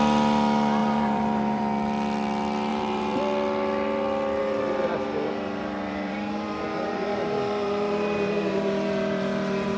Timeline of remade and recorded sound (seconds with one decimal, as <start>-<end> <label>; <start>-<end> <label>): 0.0-0.8 recorded; 0.8-1.6 remade; 1.6-2.7 recorded; 2.7-3.2 remade; 3.2-4.4 recorded; 4.4-9.8 remade